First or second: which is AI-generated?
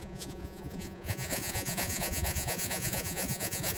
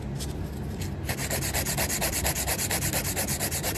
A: first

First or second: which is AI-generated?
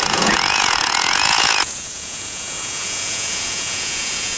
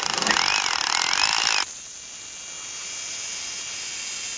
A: first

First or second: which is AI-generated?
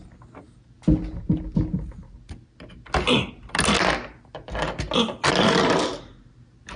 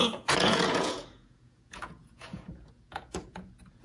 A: second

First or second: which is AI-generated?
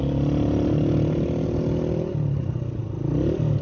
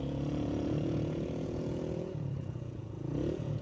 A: second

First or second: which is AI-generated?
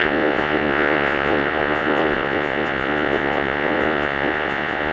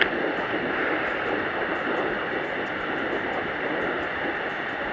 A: first